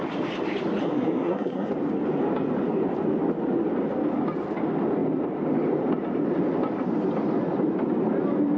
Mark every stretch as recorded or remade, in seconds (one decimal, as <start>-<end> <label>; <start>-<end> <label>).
0.0-0.8 recorded; 0.8-1.7 remade; 1.7-8.6 recorded